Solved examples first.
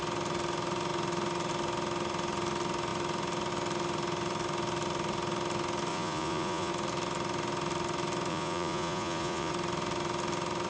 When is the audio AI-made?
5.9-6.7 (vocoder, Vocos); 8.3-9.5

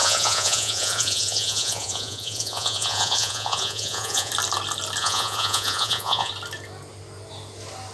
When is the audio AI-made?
0.0-4.3 (vocoder, Vocos); 5.0-6.3

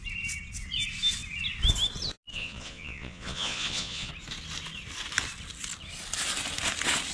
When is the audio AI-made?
2.3-4.1 (vocoder, Vocos)

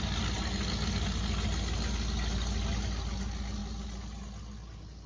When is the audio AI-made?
none

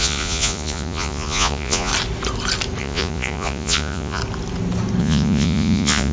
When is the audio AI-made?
0.0-1.9 (vocoder, Vocos); 2.8-4.2; 5.0-6.1